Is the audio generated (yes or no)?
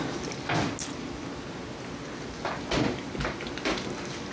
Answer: no